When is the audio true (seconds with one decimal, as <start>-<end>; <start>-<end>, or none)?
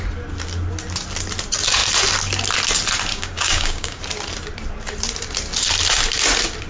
0.0-3.1; 4.0-6.7